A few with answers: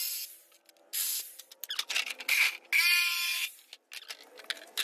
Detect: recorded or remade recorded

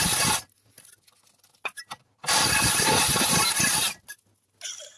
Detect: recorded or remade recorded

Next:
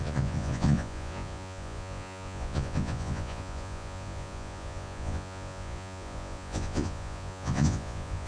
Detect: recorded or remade remade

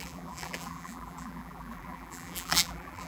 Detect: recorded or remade remade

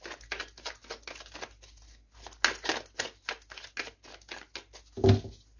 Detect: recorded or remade recorded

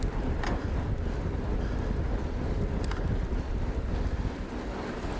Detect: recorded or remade recorded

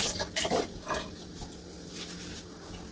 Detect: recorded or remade recorded